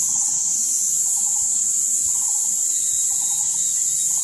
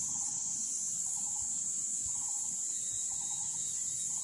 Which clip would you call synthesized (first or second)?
second